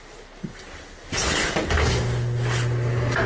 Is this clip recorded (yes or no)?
yes